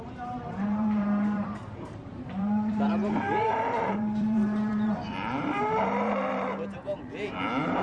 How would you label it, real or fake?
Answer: fake